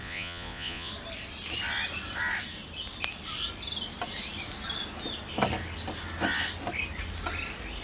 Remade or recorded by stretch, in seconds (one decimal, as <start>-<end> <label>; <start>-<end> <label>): 0.0-0.9 remade; 0.9-7.8 recorded